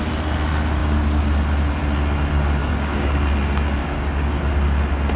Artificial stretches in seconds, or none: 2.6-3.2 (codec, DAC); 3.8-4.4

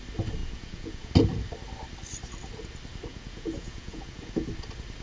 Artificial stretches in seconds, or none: 0.4-1.1 (vocoder, Vocos); 3.1-4.5